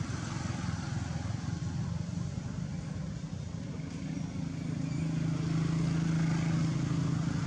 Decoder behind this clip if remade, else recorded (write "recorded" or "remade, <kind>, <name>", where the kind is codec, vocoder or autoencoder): recorded